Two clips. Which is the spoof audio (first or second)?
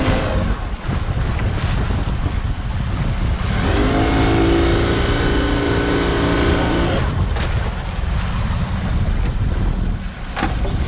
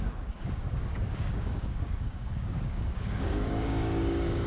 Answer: second